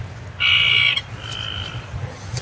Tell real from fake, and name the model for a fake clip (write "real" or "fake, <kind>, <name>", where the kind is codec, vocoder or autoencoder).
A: real